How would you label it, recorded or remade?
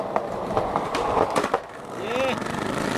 recorded